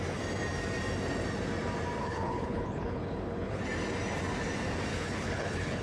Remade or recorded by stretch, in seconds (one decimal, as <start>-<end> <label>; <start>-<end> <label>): 0.0-2.0 recorded; 2.0-3.6 remade; 3.6-4.9 recorded; 4.9-5.8 remade